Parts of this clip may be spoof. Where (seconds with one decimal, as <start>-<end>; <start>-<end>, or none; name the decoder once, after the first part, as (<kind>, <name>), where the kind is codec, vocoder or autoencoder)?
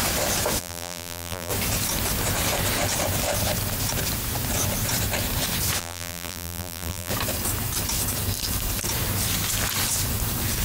0.6-1.5 (vocoder, BigVGAN v2); 5.8-7.1